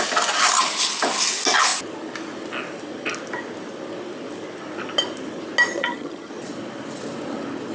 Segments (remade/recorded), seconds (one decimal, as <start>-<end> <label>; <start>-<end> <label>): 0.0-5.7 recorded; 5.7-6.3 remade; 6.3-7.7 recorded